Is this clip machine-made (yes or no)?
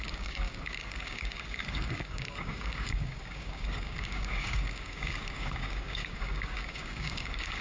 yes